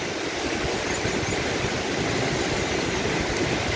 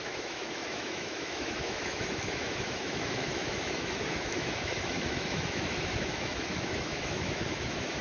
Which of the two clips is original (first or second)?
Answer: first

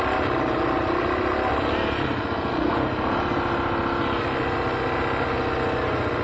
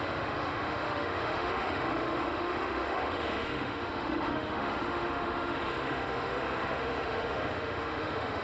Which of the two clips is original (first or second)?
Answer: first